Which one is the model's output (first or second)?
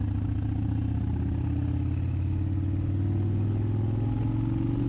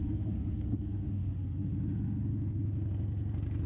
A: second